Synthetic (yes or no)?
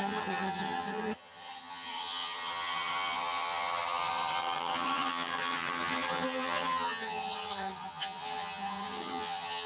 yes